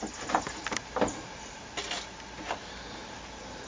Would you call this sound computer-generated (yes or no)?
no